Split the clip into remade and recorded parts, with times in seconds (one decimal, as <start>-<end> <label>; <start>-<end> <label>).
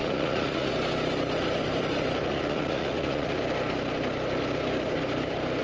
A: 0.0-0.7 remade; 0.7-2.3 recorded; 2.3-3.4 remade; 3.4-5.6 recorded